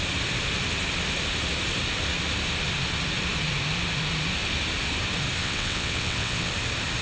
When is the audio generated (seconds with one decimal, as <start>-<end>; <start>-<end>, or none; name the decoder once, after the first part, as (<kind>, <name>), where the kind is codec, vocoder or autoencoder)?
5.4-6.5 (vocoder, WaveNeXt)